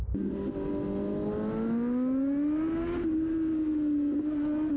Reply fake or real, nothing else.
real